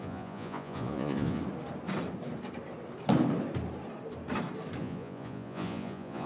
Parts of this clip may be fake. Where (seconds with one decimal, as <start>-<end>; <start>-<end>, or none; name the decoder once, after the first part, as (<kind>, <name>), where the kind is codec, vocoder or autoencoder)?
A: 0.0-1.4 (vocoder, Vocos); 4.8-6.3